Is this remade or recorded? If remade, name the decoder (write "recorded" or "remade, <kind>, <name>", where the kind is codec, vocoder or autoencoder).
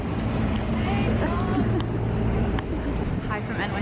recorded